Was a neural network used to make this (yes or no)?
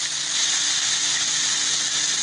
no